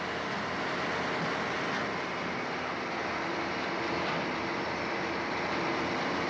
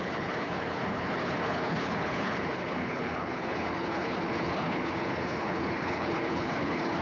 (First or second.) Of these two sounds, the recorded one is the first